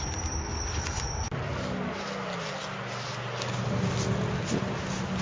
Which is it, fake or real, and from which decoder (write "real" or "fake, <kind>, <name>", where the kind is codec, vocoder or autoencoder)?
real